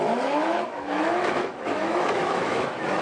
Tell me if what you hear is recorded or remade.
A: remade